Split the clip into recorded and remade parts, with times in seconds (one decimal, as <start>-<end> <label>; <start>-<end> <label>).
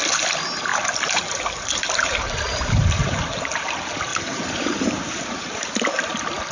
0.0-0.7 recorded; 0.7-3.2 remade; 3.2-4.1 recorded; 4.1-5.8 remade; 5.8-6.5 recorded